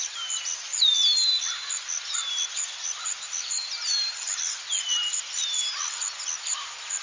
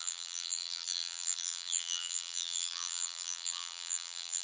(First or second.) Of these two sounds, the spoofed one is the second